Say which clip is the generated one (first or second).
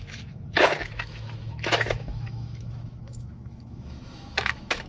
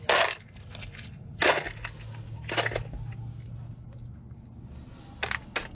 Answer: first